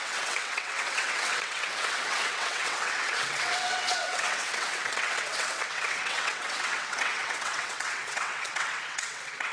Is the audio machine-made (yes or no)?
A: yes